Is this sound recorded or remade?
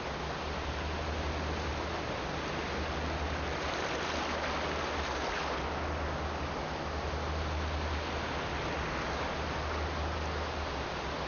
recorded